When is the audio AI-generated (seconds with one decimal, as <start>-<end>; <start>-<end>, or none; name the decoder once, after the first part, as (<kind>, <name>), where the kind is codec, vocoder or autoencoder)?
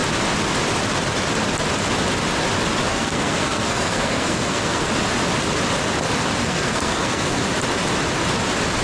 2.9-4.9 (codec, SNAC); 6.4-7.4